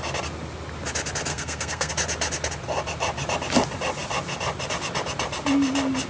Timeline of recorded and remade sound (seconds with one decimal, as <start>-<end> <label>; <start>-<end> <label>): 0.0-1.3 recorded; 1.3-1.9 remade; 1.9-6.1 recorded